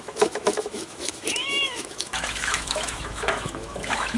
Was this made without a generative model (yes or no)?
no